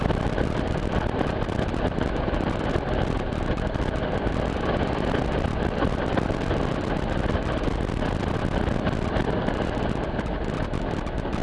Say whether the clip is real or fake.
real